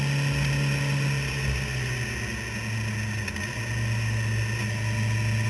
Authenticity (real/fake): real